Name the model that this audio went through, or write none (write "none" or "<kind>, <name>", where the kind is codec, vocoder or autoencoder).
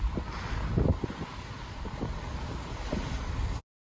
none